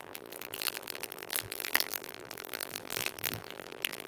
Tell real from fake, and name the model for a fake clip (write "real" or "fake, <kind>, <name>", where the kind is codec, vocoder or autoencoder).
fake, vocoder, BigVGAN v2